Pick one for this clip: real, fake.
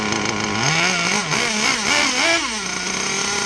real